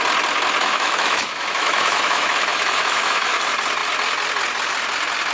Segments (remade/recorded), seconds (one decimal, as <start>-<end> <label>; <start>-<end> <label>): 0.0-0.6 recorded; 0.6-3.4 remade; 3.4-5.3 recorded